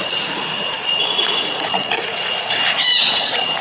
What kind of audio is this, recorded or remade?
remade